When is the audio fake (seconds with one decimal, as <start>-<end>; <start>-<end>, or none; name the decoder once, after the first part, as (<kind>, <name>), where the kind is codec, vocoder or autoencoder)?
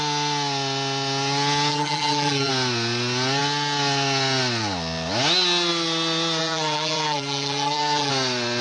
1.7-2.5 (vocoder, BigVGAN v2); 6.4-8.1